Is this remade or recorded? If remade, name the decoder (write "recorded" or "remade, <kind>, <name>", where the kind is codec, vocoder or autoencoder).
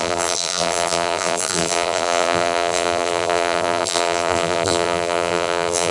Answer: remade, vocoder, BigVGAN v2